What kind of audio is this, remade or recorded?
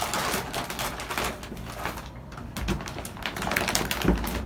recorded